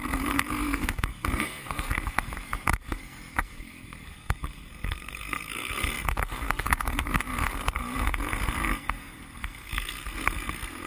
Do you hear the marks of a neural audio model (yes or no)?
yes